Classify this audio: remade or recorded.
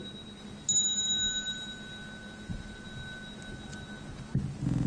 recorded